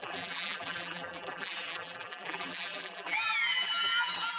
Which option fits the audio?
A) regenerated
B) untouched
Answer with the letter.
A